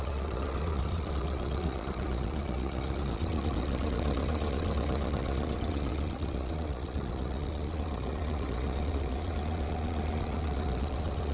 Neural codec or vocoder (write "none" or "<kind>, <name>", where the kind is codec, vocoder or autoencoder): vocoder, Vocos